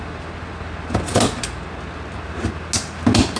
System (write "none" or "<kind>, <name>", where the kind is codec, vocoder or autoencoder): none